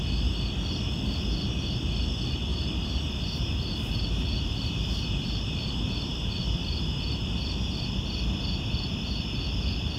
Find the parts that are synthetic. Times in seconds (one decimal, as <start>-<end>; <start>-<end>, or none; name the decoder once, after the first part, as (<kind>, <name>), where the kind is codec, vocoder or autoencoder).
2.5-6.3 (vocoder, BigVGAN v2)